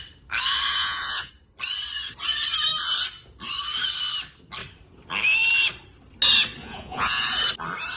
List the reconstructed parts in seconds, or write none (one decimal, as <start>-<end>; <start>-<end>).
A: 0.8-1.3; 6.6-7.3